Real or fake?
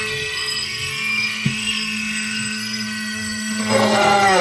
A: fake